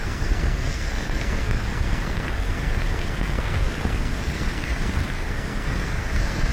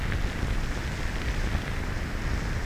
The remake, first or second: first